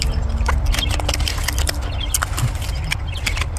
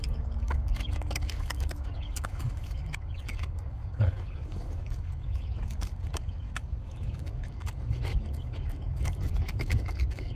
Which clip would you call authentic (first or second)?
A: first